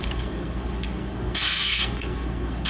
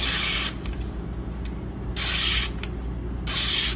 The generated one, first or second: first